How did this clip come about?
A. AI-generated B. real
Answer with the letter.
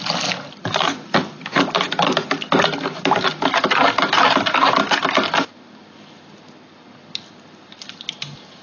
B